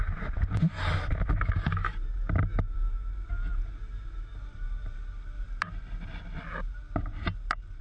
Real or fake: real